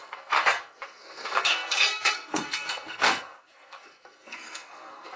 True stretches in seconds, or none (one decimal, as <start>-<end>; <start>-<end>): none